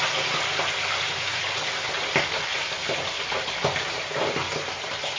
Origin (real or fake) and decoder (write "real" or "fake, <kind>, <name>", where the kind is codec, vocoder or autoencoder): real